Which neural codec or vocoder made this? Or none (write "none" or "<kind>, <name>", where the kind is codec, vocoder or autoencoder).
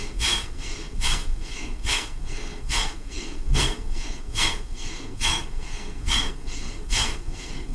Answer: codec, SNAC